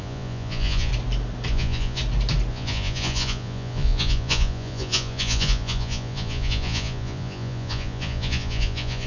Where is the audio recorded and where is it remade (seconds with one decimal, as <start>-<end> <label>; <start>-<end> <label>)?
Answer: 0.0-0.9 remade; 0.9-1.5 recorded; 1.5-2.0 remade; 2.0-2.5 recorded; 2.5-9.1 remade

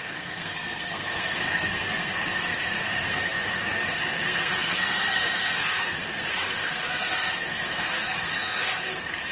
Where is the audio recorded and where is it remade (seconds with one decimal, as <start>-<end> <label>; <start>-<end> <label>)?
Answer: 0.0-9.3 remade

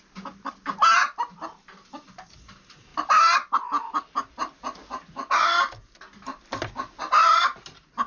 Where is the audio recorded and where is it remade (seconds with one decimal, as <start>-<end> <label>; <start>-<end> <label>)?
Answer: 0.0-8.1 recorded

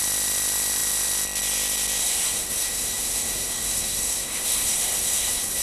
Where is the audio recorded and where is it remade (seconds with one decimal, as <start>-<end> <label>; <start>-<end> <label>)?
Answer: 0.0-2.0 recorded; 2.0-5.6 remade